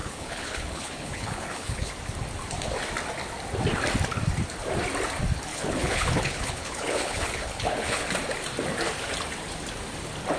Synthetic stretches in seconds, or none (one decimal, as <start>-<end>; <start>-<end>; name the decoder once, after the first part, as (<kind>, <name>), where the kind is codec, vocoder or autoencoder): 0.0-1.9 (codec, HILCodec); 5.5-8.1